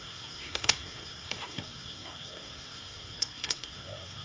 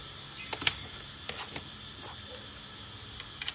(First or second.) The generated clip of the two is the first